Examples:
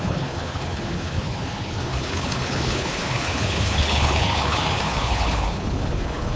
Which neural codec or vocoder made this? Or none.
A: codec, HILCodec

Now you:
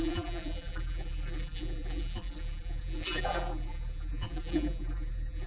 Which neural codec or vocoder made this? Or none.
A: vocoder, BigVGAN v2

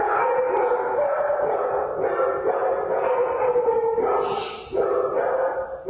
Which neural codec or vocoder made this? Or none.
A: none